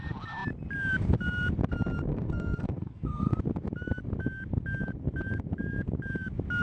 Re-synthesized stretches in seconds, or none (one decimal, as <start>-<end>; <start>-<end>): 2.1-3.3